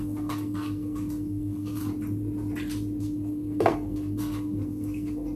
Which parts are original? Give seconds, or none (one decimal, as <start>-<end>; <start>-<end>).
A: 1.8-3.0